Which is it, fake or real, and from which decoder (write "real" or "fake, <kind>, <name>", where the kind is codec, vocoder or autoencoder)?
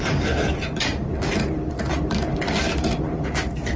real